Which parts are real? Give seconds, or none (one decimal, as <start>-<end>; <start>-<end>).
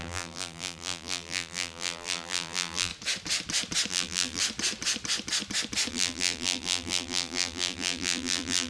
2.9-3.9; 4.4-5.9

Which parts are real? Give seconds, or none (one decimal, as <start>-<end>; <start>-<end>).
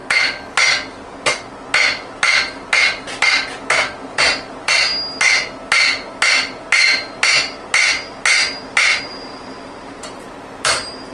0.0-4.1; 4.9-9.0